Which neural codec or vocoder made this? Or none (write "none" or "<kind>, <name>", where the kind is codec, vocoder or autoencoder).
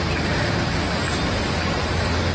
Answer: vocoder, BigVGAN v2